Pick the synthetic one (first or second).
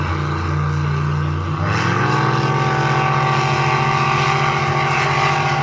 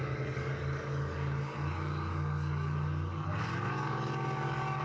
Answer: second